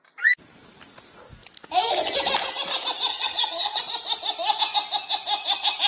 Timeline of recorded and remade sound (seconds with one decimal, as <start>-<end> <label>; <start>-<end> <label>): 0.0-3.1 recorded; 3.1-3.8 remade; 3.8-5.9 recorded